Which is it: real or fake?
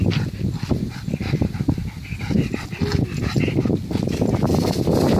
real